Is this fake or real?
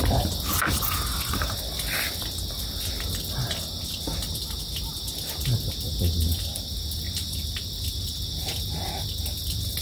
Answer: real